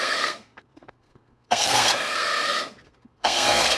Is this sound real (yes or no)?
no